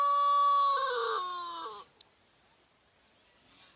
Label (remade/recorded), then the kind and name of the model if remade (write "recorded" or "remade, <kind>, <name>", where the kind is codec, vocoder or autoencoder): recorded